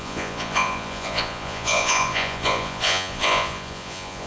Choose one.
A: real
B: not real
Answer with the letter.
B